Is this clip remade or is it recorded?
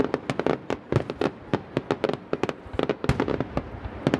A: recorded